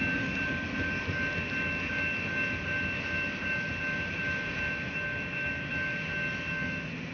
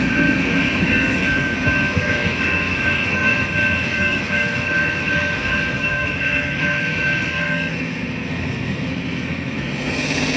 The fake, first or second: second